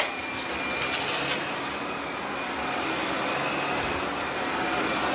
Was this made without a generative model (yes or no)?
yes